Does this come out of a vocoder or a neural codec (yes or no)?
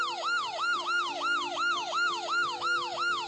yes